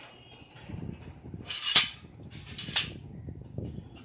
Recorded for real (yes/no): yes